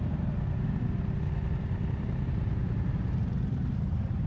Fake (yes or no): yes